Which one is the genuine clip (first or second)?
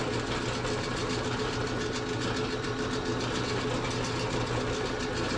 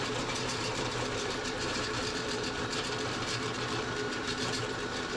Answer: first